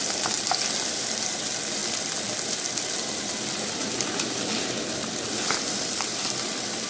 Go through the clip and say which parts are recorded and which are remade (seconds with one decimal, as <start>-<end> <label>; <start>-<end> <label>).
0.0-1.8 remade; 1.8-2.5 recorded; 2.5-6.9 remade